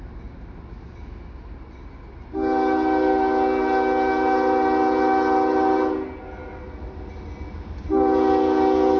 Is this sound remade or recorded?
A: recorded